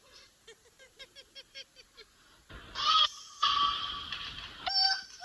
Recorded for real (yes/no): yes